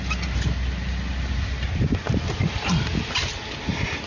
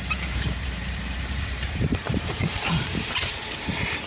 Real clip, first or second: first